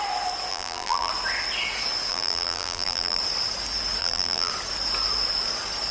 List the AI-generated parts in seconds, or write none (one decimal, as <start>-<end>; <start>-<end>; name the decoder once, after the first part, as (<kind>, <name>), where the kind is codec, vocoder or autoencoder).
0.5-1.1 (vocoder, BigVGAN v2); 2.1-3.2; 4.0-4.5